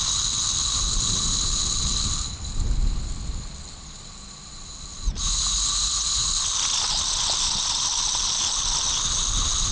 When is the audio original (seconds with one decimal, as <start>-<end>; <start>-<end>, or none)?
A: 0.0-5.2; 6.3-9.7

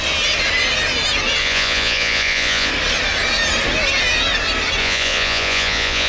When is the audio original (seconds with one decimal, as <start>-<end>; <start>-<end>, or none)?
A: 0.0-1.4; 2.7-4.8

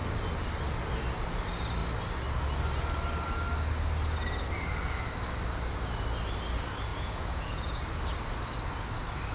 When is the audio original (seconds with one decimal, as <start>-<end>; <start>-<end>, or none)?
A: 0.0-6.9; 7.8-9.3

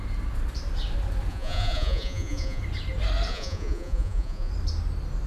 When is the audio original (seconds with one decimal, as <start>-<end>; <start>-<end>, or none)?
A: 0.0-1.3; 2.6-3.3; 4.5-5.3

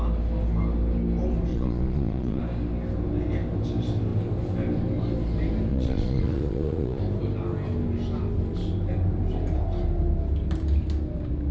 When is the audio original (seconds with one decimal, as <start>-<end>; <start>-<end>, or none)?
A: 0.0-1.5; 2.4-5.7; 7.0-11.5